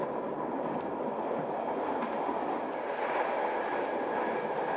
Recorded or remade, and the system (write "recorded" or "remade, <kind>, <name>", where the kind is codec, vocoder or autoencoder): recorded